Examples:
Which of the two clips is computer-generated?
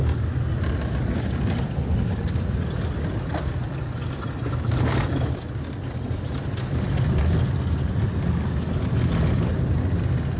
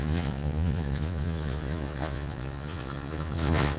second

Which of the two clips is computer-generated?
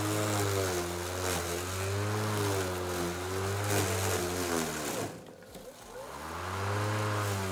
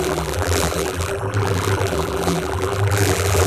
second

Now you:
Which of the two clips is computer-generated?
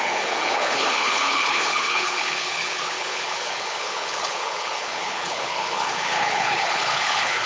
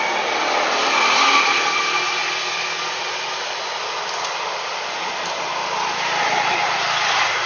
first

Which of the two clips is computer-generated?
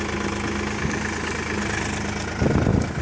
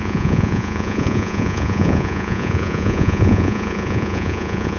second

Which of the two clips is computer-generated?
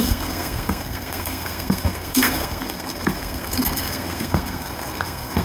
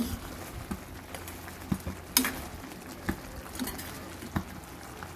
first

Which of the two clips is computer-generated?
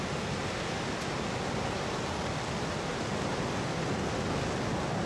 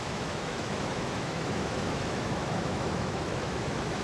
second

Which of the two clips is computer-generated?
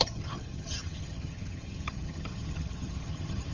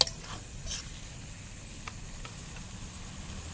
first